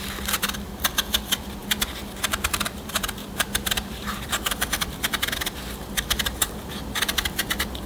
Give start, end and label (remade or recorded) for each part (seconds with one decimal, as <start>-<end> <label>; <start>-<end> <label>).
0.0-1.6 remade; 1.6-2.3 recorded; 2.3-7.9 remade